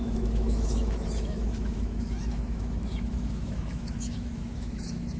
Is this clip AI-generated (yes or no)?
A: yes